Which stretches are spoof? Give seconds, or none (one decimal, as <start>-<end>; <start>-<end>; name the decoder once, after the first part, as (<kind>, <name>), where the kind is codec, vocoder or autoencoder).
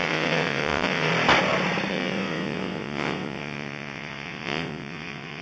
0.0-1.1 (vocoder, WaveNeXt); 1.9-5.4